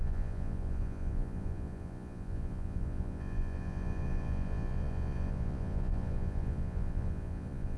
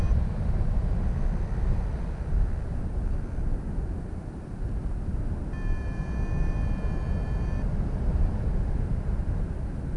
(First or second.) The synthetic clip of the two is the first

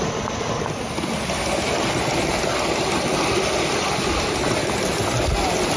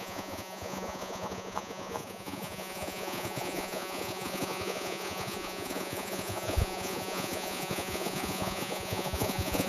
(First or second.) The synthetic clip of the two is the second